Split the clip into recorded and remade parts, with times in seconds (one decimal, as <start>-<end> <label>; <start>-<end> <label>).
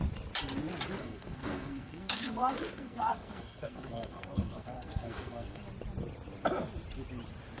0.0-1.0 recorded; 1.0-5.6 remade; 5.6-7.6 recorded